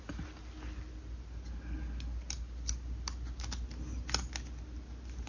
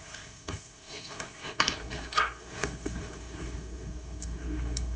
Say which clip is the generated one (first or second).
second